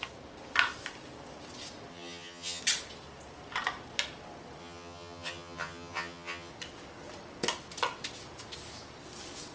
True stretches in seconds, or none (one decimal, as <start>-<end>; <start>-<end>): 0.0-1.9; 2.6-4.6; 6.5-9.5